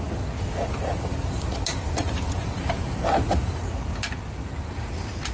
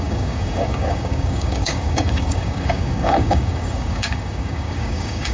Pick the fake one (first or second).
second